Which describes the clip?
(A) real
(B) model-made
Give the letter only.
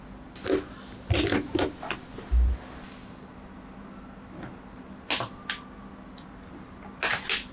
A